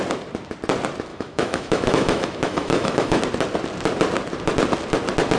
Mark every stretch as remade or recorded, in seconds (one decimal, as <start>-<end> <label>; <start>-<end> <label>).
0.0-1.1 recorded; 1.1-3.2 remade; 3.2-5.4 recorded